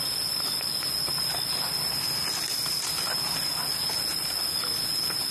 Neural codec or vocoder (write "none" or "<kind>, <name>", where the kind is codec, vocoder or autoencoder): none